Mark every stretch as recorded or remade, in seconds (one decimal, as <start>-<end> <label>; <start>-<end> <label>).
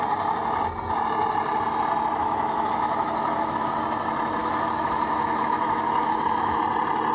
0.0-2.2 recorded; 2.2-3.8 remade; 3.8-4.4 recorded; 4.4-6.6 remade; 6.6-7.1 recorded